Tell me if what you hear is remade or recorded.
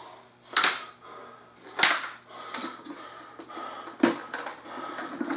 recorded